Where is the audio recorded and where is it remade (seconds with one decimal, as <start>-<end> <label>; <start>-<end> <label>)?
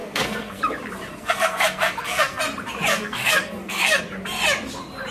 0.0-0.6 remade; 0.6-1.1 recorded; 1.1-2.4 remade; 2.4-2.9 recorded; 2.9-4.0 remade; 4.0-5.1 recorded